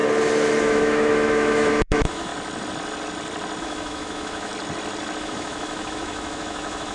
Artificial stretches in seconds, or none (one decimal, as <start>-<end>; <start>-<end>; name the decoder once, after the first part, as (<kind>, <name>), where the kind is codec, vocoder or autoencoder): 0.6-2.3 (autoencoder, DAC-VAE); 3.6-4.5; 5.2-6.9